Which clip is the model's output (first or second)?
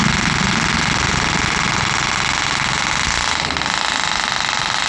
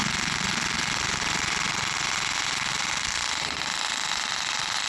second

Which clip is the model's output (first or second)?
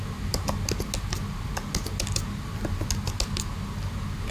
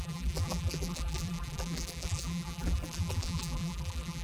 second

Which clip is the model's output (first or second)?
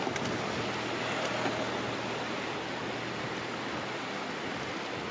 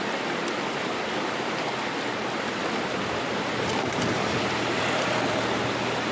second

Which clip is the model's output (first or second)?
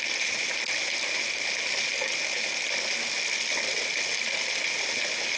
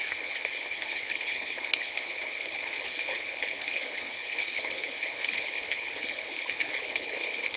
second